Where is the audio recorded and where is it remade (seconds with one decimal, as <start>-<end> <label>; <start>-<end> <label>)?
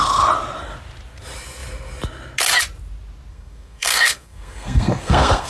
0.0-3.3 recorded; 3.3-5.5 remade